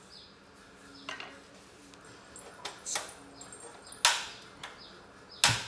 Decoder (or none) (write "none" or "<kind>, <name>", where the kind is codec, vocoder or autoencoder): none